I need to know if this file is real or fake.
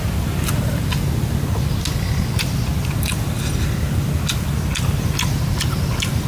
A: real